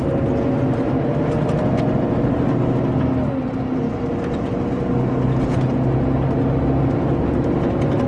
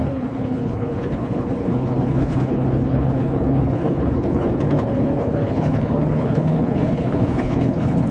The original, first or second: first